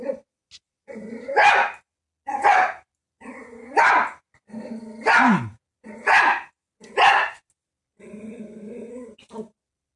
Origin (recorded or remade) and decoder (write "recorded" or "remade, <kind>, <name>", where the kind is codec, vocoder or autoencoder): recorded